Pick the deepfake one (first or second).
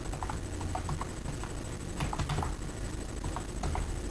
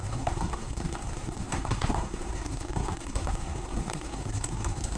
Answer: second